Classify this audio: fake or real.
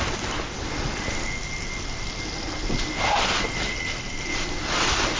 real